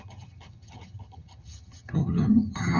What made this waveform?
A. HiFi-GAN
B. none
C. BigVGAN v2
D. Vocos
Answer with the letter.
A